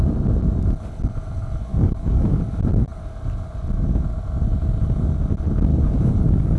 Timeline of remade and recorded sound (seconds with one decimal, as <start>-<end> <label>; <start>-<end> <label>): 0.0-1.7 recorded; 1.7-2.4 remade; 2.4-5.7 recorded; 5.7-6.6 remade